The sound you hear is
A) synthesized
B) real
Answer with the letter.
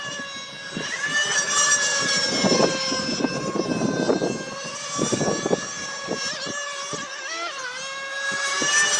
B